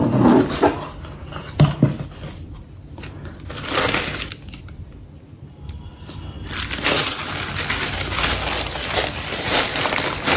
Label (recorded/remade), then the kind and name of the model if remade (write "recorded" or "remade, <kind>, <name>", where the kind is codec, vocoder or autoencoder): recorded